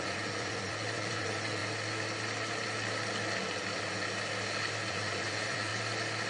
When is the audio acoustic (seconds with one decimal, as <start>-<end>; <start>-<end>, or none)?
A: 1.6-4.9; 5.7-6.3